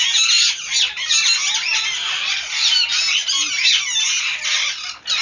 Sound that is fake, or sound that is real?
real